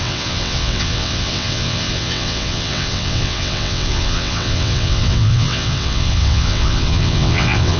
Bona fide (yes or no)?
no